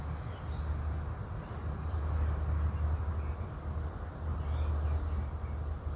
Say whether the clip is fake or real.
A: real